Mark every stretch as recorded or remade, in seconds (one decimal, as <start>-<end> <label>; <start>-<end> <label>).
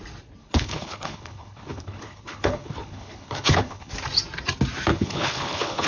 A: 0.0-0.4 recorded; 0.4-3.9 remade; 3.9-4.9 recorded; 4.9-5.9 remade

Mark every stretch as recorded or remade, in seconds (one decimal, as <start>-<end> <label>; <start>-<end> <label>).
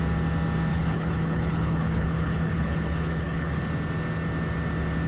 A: 0.0-0.7 recorded; 0.7-3.6 remade; 3.6-5.1 recorded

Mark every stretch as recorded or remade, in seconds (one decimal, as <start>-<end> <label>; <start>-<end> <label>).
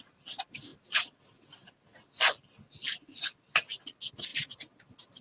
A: 0.0-5.2 recorded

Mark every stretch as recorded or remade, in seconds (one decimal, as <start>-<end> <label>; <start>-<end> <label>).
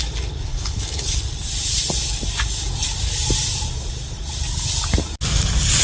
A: 0.0-0.5 recorded; 0.5-1.2 remade; 1.2-5.8 recorded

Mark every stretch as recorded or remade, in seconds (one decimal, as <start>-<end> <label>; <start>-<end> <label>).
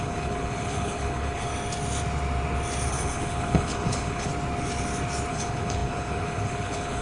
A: 0.0-1.5 remade; 1.5-2.9 recorded; 2.9-4.3 remade; 4.3-5.3 recorded; 5.3-7.0 remade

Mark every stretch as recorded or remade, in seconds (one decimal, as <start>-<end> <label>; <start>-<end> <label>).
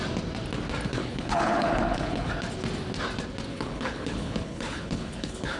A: 0.0-0.9 recorded; 0.9-2.3 remade; 2.3-3.5 recorded; 3.5-5.6 remade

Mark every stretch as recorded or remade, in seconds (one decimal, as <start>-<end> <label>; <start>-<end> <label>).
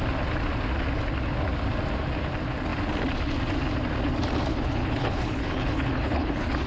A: 0.0-4.5 recorded; 4.5-6.7 remade